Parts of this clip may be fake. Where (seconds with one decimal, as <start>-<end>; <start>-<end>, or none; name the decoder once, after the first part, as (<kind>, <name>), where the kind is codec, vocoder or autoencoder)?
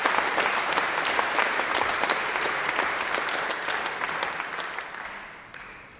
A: 0.0-3.6 (vocoder, BigVGAN v2)